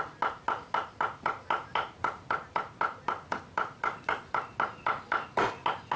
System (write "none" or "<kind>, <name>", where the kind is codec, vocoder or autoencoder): none